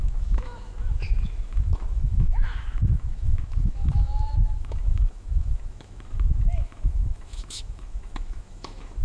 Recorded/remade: remade